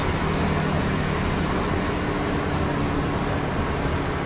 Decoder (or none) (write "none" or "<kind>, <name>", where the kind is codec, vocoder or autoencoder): none